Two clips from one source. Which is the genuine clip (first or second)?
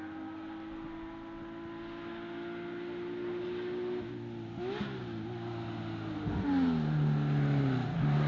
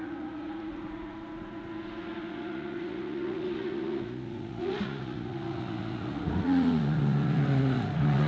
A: first